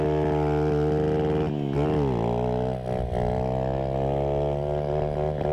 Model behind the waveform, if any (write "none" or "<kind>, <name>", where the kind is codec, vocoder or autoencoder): none